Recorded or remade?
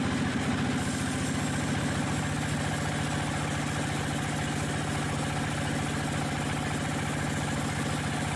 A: recorded